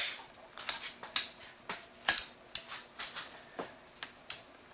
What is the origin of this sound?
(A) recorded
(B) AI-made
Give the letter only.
A